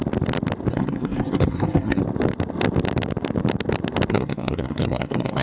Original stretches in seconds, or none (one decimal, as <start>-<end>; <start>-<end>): 0.0-0.7; 2.0-4.1